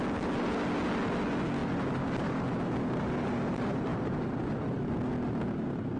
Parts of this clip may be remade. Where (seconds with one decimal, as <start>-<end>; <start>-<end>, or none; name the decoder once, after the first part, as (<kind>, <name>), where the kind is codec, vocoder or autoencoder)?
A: none